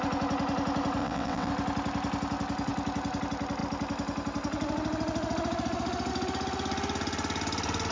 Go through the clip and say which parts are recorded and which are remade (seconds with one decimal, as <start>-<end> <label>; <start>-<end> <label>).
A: 0.0-1.0 recorded; 1.0-1.5 remade; 1.5-7.9 recorded